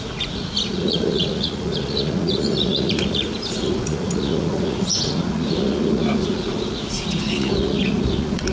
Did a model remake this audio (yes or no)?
yes